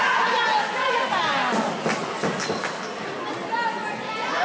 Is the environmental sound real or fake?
real